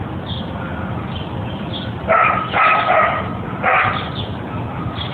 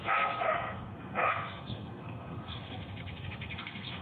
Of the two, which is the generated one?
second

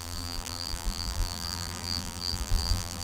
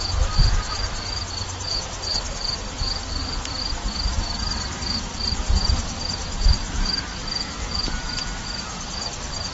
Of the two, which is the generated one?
first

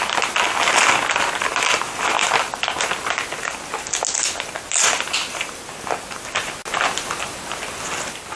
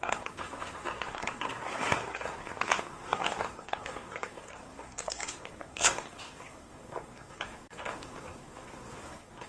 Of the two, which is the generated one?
second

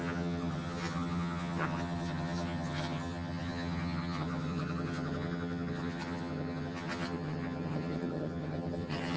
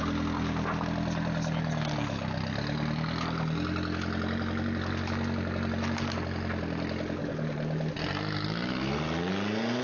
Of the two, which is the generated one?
first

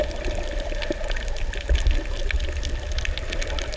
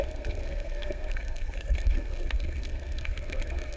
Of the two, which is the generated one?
second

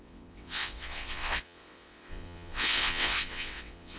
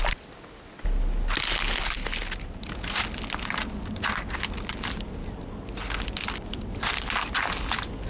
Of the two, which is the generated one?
first